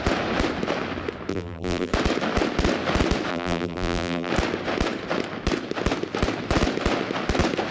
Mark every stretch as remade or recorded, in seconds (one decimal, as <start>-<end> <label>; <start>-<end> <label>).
0.0-1.3 recorded; 1.3-1.9 remade; 1.9-3.3 recorded; 3.3-4.3 remade; 4.3-7.7 recorded